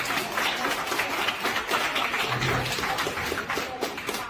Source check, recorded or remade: recorded